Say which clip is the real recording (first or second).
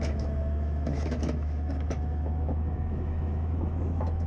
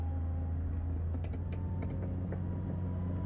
second